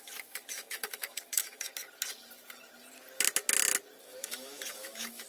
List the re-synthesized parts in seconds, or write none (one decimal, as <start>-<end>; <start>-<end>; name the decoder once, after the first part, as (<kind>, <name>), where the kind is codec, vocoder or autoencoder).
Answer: 0.0-1.7 (autoencoder, DAC-VAE); 4.0-5.3